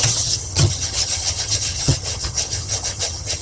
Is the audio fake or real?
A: fake